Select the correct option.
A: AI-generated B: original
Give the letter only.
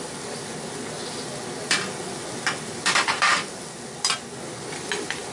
B